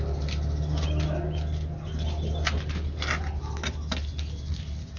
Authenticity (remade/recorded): recorded